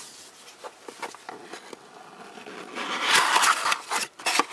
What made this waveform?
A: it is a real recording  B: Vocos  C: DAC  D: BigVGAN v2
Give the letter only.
A